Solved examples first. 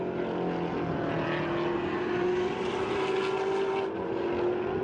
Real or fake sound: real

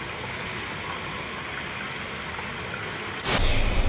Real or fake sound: real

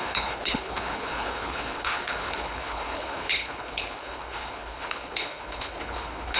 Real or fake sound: fake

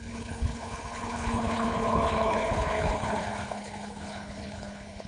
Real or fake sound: fake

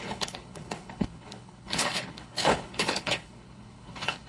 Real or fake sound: fake